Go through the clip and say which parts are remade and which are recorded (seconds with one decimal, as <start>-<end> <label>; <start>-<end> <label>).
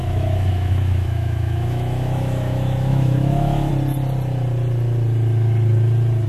0.0-3.7 remade; 3.7-6.3 recorded